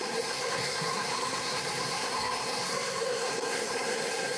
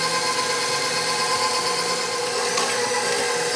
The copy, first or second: first